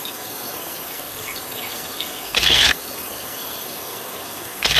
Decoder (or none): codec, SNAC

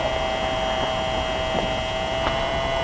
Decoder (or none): none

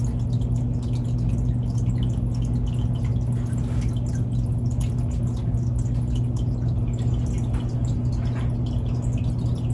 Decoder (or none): none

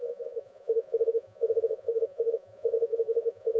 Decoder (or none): vocoder, Vocos